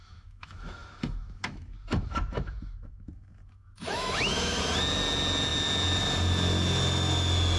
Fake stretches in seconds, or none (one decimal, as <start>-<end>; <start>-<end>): 0.0-4.6